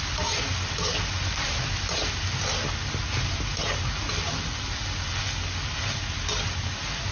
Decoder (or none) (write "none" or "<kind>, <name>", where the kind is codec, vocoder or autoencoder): none